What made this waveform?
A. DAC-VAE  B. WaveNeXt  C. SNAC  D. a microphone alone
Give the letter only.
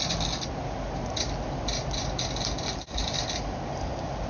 D